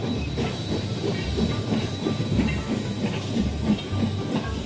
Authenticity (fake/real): fake